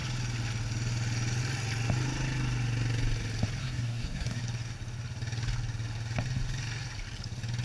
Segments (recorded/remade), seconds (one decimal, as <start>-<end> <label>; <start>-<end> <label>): 0.0-3.6 recorded; 3.6-4.4 remade; 4.4-7.6 recorded